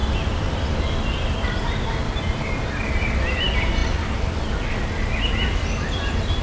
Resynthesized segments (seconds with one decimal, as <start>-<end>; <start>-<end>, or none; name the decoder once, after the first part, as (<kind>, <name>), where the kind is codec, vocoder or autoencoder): none